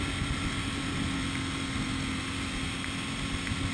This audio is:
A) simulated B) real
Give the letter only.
B